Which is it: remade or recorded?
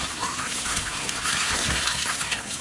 remade